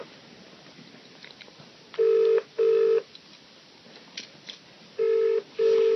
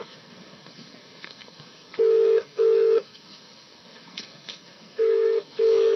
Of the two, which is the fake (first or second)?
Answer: second